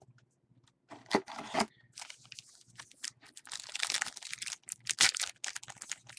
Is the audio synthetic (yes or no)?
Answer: no